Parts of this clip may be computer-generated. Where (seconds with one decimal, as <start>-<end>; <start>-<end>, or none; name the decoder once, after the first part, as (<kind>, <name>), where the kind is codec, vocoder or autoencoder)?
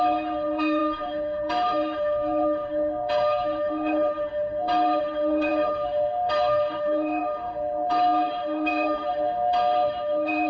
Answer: 0.0-10.5 (autoencoder, DAC-VAE)